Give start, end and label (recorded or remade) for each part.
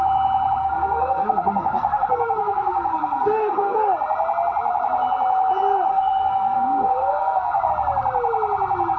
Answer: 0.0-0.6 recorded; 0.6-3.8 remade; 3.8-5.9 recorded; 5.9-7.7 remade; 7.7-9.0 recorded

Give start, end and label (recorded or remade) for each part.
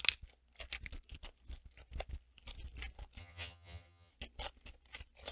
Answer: 0.0-3.2 recorded; 3.2-4.1 remade; 4.1-5.3 recorded